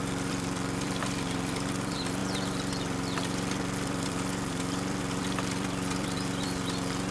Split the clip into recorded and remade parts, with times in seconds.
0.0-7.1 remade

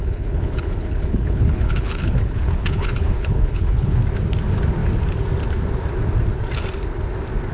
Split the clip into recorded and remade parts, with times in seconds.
0.0-4.0 remade; 4.0-7.5 recorded

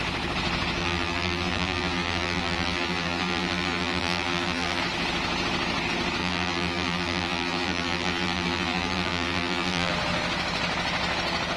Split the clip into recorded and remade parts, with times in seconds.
0.0-0.8 recorded; 0.8-4.8 remade; 4.8-6.2 recorded; 6.2-9.9 remade; 9.9-11.6 recorded

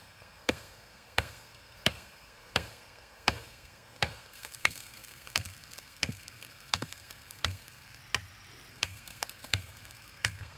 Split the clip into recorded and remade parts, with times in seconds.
0.0-8.0 remade; 8.0-8.7 recorded; 8.7-10.6 remade